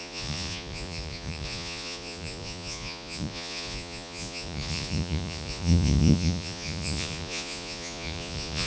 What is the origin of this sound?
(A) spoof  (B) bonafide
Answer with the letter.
A